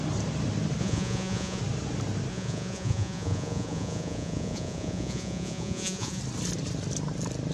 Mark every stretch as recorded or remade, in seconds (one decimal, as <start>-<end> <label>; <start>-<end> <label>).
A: 0.0-0.8 recorded; 0.8-1.6 remade; 1.6-2.3 recorded; 2.3-6.2 remade; 6.2-7.5 recorded